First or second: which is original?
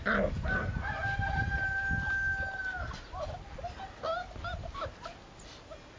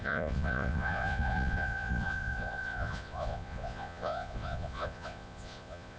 first